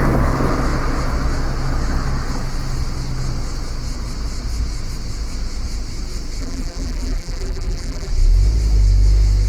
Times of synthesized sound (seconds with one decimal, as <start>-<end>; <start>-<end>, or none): 6.4-8.1